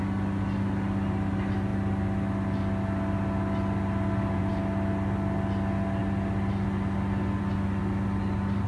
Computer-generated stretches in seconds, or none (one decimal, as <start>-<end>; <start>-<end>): none